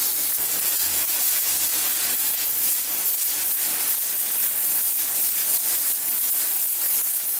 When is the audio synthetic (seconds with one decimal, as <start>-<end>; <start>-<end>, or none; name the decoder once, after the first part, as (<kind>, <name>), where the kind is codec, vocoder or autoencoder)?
1.7-2.8 (vocoder, Vocos)